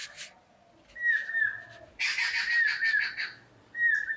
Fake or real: real